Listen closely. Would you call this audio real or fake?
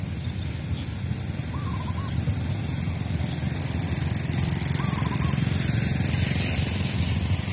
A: real